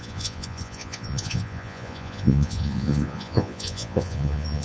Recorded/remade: remade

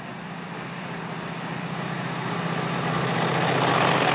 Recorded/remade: recorded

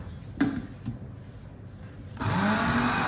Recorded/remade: recorded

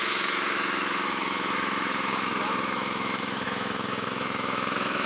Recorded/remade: remade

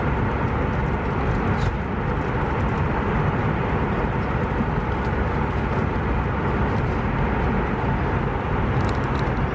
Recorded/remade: recorded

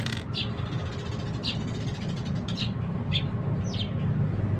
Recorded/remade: recorded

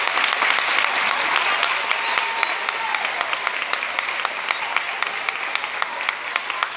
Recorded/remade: recorded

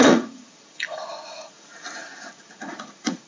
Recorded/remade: remade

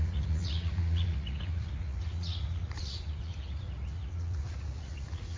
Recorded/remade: remade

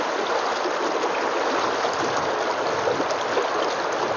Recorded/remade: recorded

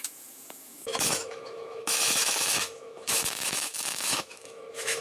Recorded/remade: remade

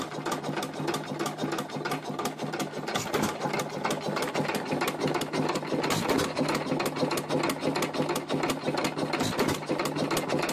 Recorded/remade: recorded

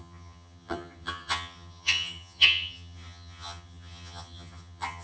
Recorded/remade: remade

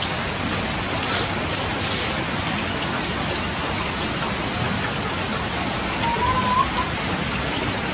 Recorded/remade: recorded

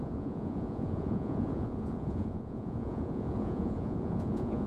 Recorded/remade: remade